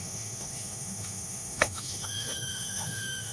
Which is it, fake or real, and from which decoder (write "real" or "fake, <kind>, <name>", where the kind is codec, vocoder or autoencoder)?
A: fake, autoencoder, DAC-VAE